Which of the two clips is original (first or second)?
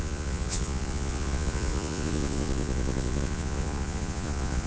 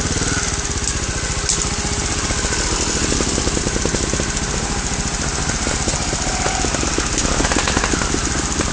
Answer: second